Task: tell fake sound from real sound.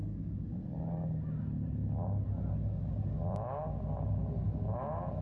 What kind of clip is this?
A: real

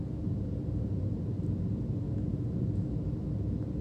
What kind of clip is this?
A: fake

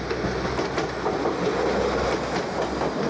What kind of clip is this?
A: real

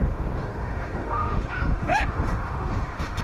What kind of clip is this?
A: fake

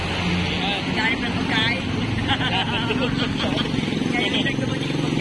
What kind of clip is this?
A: real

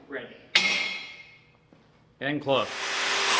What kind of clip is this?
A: real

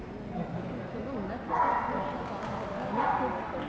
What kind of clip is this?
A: real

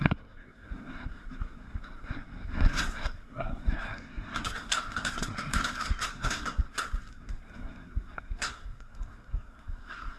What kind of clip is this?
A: fake